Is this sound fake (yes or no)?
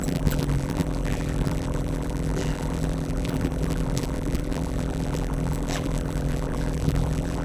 yes